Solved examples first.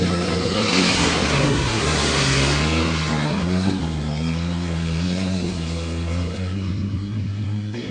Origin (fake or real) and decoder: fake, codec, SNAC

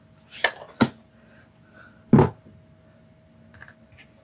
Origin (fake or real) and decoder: real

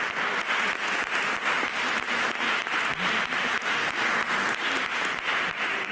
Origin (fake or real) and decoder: real